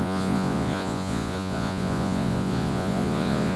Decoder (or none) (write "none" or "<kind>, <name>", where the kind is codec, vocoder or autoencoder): vocoder, Vocos